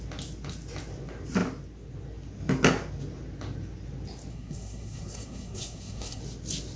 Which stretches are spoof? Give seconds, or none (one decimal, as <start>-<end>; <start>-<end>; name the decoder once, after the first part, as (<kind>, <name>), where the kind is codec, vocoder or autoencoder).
4.3-6.2 (codec, SNAC)